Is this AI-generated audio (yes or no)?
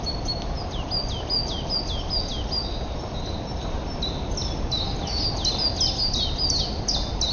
no